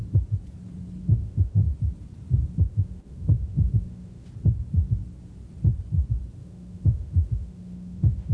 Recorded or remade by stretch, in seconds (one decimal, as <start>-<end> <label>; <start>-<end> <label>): 0.0-1.0 recorded; 1.0-1.7 remade; 1.7-2.7 recorded; 2.7-4.3 remade; 4.3-6.4 recorded; 6.4-8.3 remade